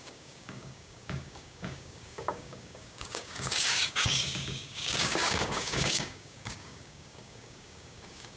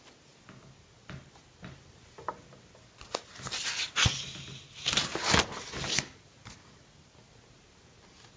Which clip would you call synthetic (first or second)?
first